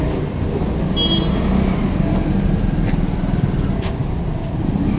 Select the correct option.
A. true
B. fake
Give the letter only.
A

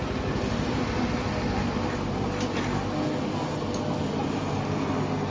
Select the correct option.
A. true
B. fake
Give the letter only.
A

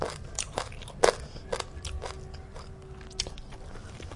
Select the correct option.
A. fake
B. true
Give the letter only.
B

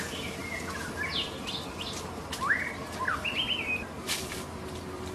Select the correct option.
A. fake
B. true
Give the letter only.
B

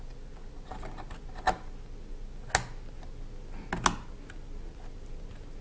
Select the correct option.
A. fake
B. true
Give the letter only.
B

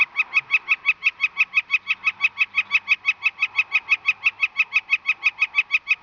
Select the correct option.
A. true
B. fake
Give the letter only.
A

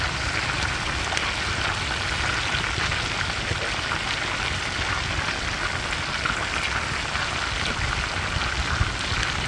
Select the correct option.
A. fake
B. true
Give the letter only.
B